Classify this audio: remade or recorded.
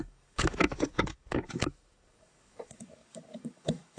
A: remade